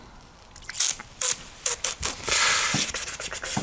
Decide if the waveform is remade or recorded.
remade